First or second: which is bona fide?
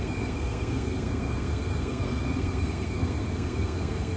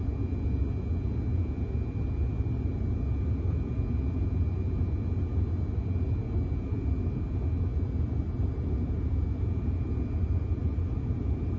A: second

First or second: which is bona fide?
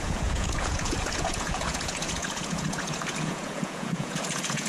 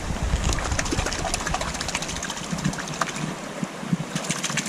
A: second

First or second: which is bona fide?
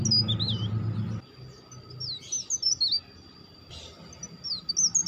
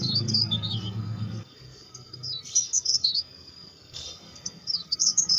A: first